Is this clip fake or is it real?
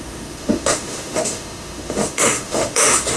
fake